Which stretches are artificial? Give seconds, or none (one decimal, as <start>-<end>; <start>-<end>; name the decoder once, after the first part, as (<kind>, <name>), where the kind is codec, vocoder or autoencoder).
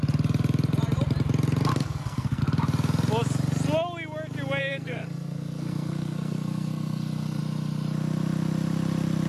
1.7-2.4 (codec, SNAC); 4.6-7.4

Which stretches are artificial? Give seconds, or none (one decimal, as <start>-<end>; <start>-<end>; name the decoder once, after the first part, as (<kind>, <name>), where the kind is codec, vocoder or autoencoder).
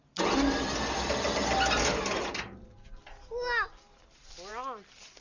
none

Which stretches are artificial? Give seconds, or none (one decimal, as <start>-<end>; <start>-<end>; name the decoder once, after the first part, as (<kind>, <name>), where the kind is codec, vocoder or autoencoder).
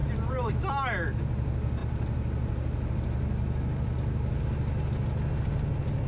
none